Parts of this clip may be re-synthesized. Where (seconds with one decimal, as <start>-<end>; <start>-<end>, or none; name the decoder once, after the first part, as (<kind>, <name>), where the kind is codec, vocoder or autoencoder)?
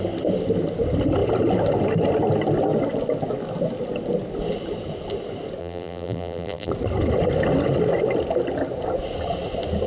5.6-6.7 (vocoder, BigVGAN v2)